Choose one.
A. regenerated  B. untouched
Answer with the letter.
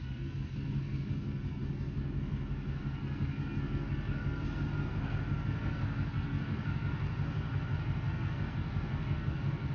A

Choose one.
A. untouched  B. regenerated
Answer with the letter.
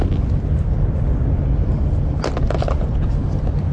A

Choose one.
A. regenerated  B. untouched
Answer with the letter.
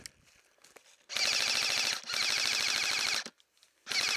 B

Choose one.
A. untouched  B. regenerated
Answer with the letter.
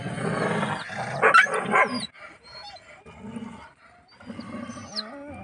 A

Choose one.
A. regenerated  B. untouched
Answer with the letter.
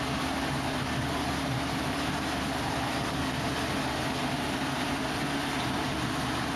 B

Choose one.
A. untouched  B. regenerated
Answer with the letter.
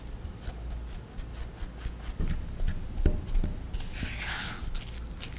A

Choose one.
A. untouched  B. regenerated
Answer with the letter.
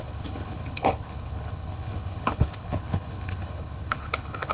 B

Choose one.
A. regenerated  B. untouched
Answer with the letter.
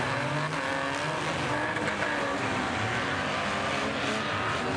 B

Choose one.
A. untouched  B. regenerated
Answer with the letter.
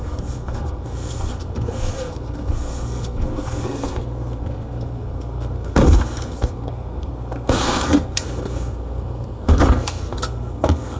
B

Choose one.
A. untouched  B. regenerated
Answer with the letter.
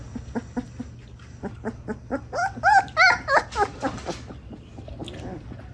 A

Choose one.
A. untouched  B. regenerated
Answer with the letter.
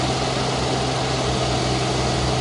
A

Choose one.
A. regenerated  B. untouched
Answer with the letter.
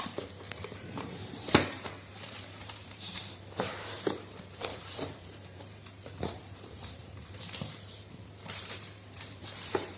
A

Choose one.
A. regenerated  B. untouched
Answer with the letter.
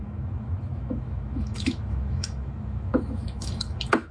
A